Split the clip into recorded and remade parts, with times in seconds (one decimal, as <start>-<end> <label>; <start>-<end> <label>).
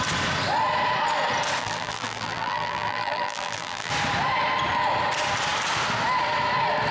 0.0-1.6 recorded; 1.6-3.9 remade; 3.9-6.9 recorded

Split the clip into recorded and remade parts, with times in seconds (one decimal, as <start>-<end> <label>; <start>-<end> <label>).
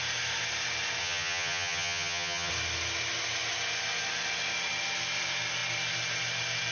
0.0-1.0 recorded; 1.0-2.5 remade; 2.5-6.7 recorded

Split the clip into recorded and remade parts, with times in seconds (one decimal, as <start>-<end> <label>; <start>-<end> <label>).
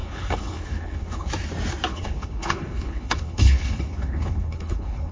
0.0-1.3 remade; 1.3-1.9 recorded; 1.9-5.1 remade